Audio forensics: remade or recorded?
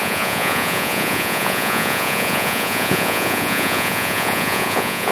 remade